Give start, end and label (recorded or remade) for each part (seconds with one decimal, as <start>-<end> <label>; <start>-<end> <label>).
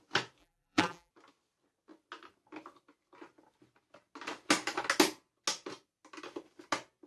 0.0-0.4 recorded; 0.4-1.1 remade; 1.1-7.1 recorded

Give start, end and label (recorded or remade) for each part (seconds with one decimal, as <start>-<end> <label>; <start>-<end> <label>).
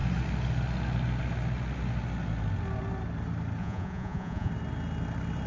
0.0-3.6 recorded; 3.6-4.5 remade; 4.5-5.5 recorded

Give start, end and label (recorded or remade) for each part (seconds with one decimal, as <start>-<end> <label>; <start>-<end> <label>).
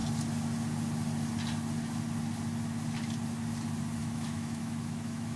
0.0-4.0 recorded; 4.0-5.4 remade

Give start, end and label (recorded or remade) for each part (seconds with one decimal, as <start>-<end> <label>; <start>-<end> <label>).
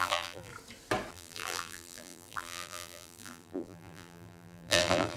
0.0-0.5 remade; 0.5-1.1 recorded; 1.1-5.2 remade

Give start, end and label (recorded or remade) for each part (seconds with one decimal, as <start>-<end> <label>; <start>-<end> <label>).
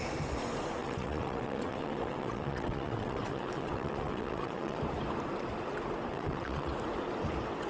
0.0-0.8 recorded; 0.8-4.8 remade; 4.8-6.1 recorded; 6.1-6.7 remade; 6.7-7.7 recorded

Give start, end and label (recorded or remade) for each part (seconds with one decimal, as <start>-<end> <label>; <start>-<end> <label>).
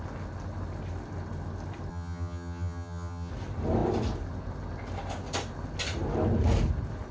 0.0-1.9 recorded; 1.9-3.3 remade; 3.3-7.1 recorded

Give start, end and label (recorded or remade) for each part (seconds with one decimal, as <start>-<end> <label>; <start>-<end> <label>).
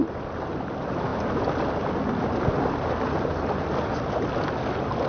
0.0-5.1 recorded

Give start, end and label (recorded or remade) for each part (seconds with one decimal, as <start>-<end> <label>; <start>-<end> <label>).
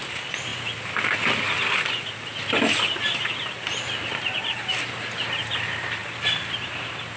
0.0-7.2 recorded